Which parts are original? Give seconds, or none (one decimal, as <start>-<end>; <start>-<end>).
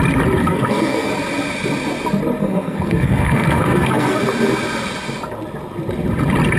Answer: 0.0-0.4; 1.1-2.4; 4.2-6.6